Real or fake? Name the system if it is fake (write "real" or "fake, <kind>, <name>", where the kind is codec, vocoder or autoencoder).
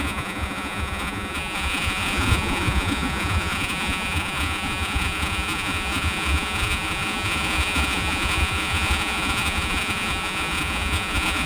fake, vocoder, Vocos